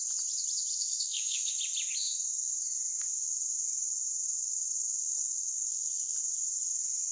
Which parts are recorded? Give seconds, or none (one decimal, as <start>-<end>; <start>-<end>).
0.0-0.7; 1.5-5.0; 6.2-7.1